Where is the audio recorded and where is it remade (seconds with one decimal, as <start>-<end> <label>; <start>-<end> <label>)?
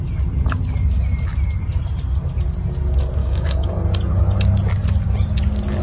0.0-3.2 recorded; 3.2-3.7 remade; 3.7-5.8 recorded